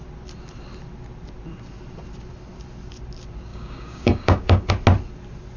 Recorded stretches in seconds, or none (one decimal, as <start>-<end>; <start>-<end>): 0.0-3.5; 4.7-5.6